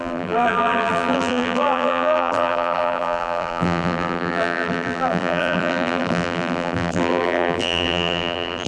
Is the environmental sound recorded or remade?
remade